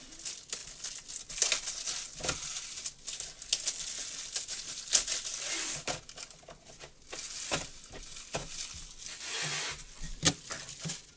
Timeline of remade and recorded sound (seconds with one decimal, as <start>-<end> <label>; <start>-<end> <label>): 0.0-11.2 recorded